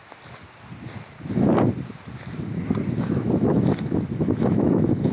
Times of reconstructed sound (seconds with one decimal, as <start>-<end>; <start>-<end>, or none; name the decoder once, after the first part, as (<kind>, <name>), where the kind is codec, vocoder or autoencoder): 3.0-5.1 (autoencoder, DAC-VAE)